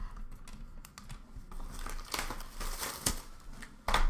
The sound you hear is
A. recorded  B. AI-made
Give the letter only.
A